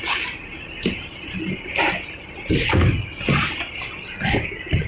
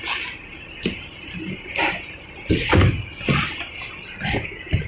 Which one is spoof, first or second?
second